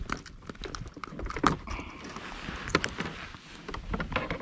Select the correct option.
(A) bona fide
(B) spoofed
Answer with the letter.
A